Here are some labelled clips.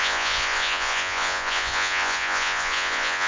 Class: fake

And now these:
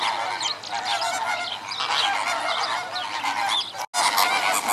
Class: real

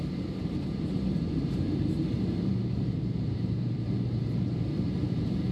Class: fake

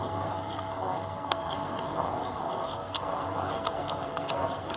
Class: fake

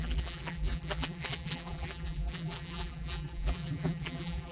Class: fake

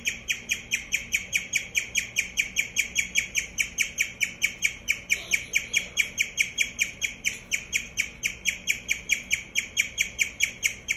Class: real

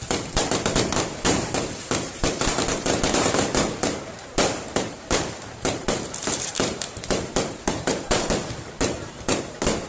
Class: fake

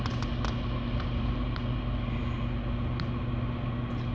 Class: real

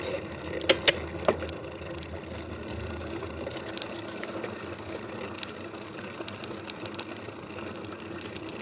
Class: real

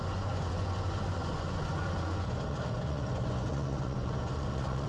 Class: fake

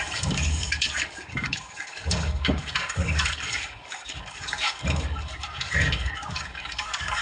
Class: fake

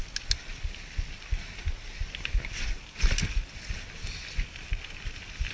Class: real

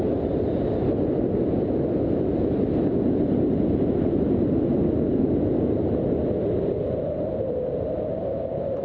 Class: real